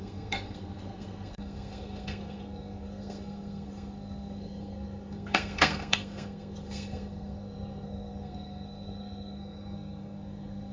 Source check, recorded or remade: remade